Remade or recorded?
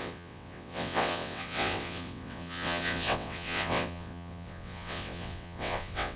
remade